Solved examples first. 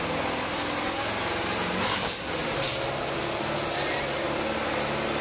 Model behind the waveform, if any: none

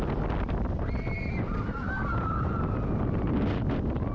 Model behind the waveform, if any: none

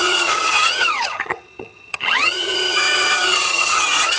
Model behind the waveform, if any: vocoder, HiFi-GAN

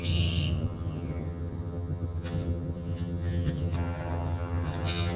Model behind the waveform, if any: vocoder, HiFi-GAN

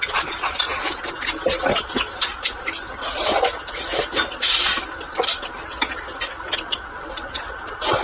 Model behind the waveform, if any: none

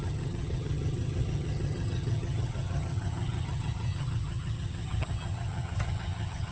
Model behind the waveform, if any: vocoder, HiFi-GAN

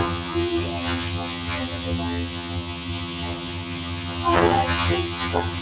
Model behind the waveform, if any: vocoder, HiFi-GAN